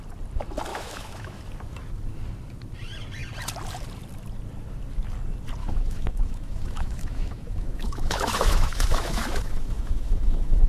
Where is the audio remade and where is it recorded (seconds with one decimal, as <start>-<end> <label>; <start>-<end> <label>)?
0.0-0.7 recorded; 0.7-1.4 remade; 1.4-5.6 recorded; 5.6-10.7 remade